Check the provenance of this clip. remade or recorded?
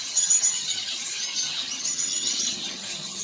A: remade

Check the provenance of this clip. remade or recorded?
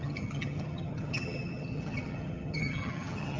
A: remade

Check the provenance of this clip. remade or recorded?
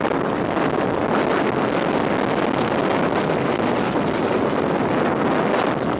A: recorded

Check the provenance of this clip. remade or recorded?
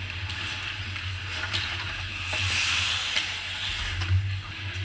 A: recorded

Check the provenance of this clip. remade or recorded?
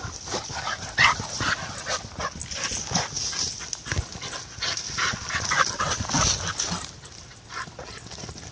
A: recorded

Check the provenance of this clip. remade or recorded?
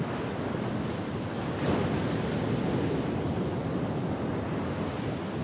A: recorded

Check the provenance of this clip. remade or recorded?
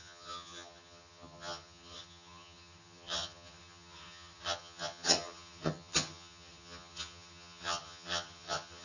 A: remade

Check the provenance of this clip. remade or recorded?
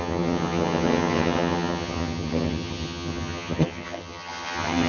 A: remade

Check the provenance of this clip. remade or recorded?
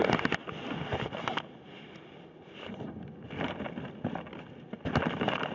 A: recorded